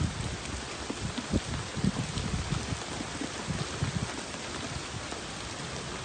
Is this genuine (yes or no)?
yes